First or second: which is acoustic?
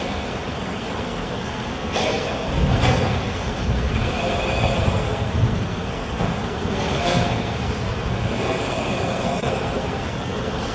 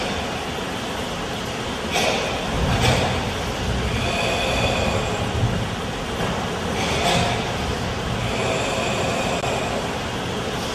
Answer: second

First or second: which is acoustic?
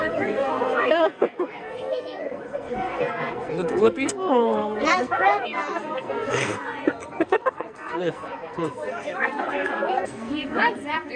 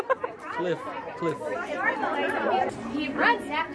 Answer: second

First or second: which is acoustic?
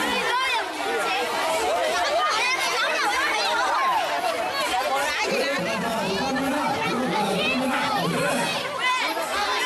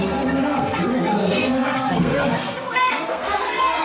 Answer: first